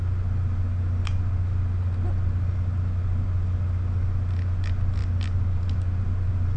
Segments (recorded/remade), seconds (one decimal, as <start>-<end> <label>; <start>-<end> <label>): 0.0-6.6 recorded